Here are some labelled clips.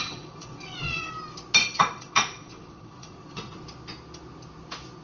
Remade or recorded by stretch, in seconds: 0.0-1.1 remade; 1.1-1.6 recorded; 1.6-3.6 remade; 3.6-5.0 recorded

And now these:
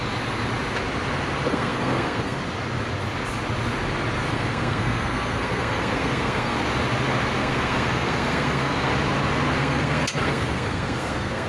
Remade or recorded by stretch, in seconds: 0.0-1.5 recorded; 1.5-2.4 remade; 2.4-4.3 recorded; 4.3-6.6 remade; 6.6-7.4 recorded; 7.4-8.9 remade; 8.9-9.6 recorded; 9.6-11.5 remade